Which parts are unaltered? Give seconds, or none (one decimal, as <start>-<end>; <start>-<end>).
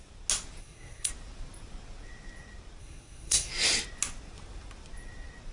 0.0-0.6; 1.1-2.8; 3.5-5.5